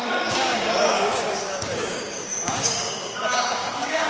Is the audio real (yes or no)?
no